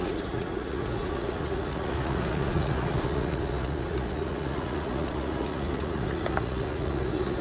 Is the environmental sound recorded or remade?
remade